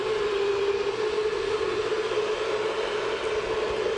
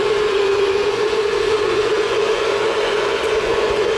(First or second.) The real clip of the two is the first